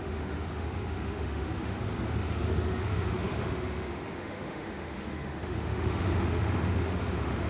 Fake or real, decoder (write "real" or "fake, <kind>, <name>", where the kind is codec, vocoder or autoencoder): fake, autoencoder, DAC-VAE